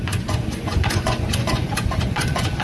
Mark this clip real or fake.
fake